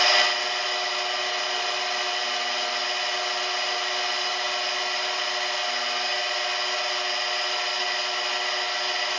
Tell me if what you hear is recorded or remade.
recorded